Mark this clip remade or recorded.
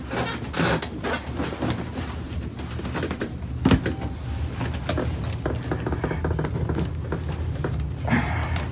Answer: recorded